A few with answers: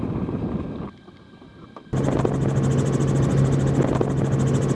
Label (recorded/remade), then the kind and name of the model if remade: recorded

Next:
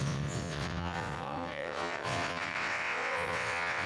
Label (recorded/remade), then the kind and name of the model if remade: remade, vocoder, WaveNeXt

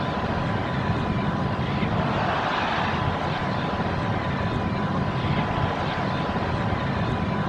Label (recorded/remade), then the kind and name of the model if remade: recorded